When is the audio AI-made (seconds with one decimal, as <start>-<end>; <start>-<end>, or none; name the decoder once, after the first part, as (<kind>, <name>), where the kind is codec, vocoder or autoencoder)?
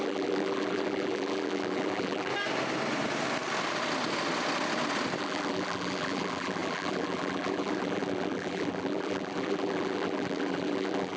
0.0-2.3 (vocoder, BigVGAN v2); 5.2-11.2